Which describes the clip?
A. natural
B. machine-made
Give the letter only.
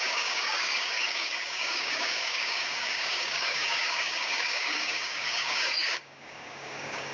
B